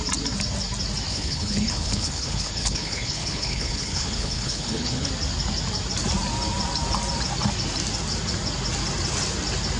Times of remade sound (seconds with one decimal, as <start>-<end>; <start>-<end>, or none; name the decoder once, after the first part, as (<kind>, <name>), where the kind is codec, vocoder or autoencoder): 1.1-5.1 (codec, HILCodec)